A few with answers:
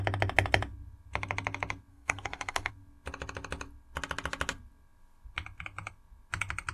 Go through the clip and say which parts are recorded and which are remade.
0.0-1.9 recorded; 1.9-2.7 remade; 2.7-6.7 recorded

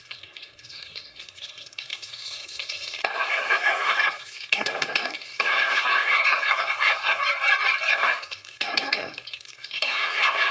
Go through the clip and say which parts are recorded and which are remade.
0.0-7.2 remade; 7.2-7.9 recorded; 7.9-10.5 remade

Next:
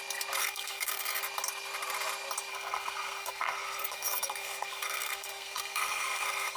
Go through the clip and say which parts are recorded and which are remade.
0.0-0.4 recorded; 0.4-1.2 remade; 1.2-2.5 recorded; 2.5-6.6 remade